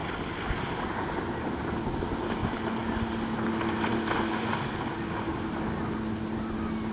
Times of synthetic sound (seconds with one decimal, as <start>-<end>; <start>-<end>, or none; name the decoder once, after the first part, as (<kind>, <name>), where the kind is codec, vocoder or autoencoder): 0.0-1.3 (vocoder, BigVGAN v2); 2.4-6.5